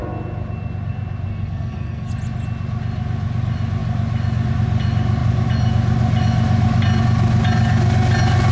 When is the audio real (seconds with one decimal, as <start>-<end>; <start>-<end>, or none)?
0.0-1.3; 2.1-8.5